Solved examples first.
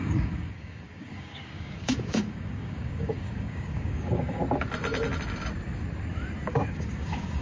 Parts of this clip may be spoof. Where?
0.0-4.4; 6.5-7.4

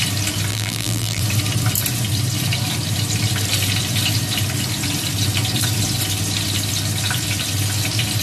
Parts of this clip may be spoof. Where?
0.5-1.2

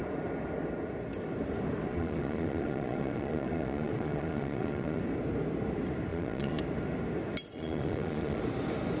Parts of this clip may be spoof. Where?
1.9-5.0; 6.1-6.6; 7.5-8.4

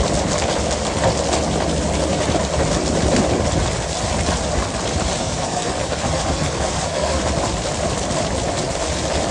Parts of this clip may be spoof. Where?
5.2-7.2

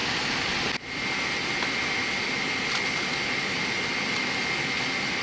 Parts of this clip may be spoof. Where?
none

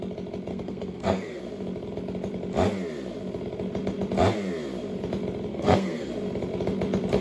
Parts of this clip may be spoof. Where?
0.5-1.4; 5.5-6.1

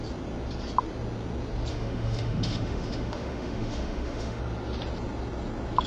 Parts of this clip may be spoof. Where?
1.7-4.4

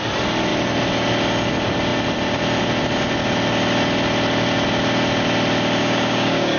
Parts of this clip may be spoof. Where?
5.8-6.6